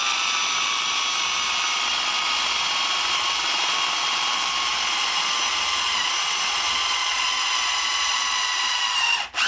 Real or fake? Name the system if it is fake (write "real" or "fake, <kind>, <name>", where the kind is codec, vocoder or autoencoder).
real